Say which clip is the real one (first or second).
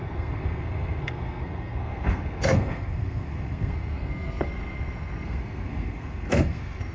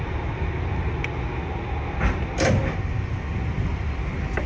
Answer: second